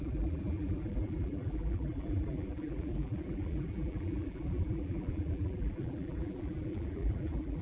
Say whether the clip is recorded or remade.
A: remade